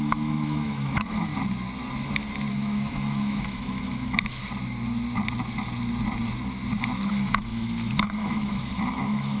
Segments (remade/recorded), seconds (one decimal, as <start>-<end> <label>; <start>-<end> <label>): 0.0-1.3 remade; 1.3-2.5 recorded; 2.5-4.4 remade; 4.4-7.1 recorded; 7.1-9.4 remade